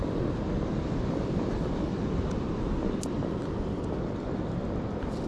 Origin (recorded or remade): recorded